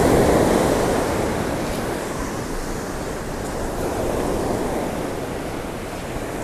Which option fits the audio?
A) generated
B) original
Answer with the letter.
B